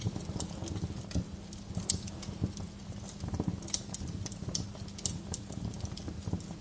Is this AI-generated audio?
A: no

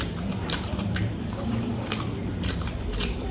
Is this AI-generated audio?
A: yes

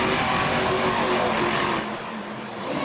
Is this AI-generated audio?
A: no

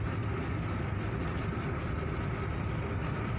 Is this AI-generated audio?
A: no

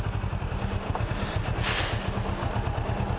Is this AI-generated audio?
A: no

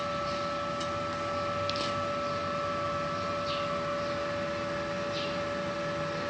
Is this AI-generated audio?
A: no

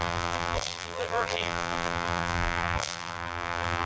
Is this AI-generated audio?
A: yes